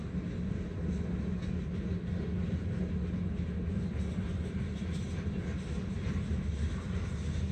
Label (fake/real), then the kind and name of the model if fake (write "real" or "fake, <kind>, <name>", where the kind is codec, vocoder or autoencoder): real